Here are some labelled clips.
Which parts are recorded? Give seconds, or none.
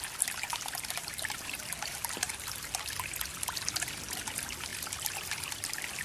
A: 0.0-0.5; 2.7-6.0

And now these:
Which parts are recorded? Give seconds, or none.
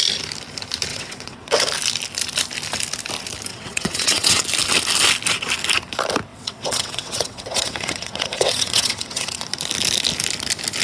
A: 0.0-0.9; 1.5-3.5; 4.4-6.3; 9.4-10.8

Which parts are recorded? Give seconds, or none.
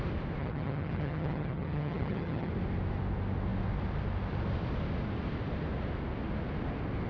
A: 0.0-0.4; 2.5-7.1